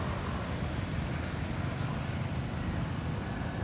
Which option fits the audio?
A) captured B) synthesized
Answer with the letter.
A